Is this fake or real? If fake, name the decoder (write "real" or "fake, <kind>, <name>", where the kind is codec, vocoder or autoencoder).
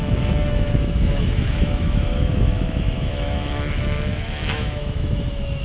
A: fake, autoencoder, DAC-VAE